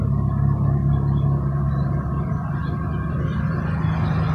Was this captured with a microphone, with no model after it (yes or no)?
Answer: yes